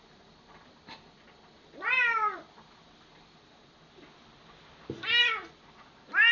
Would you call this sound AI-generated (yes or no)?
no